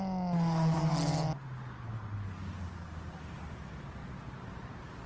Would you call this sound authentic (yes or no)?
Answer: yes